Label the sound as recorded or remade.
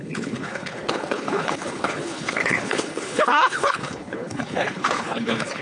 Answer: remade